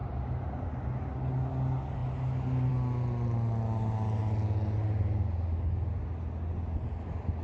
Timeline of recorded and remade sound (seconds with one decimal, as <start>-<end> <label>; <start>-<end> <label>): 0.0-7.4 recorded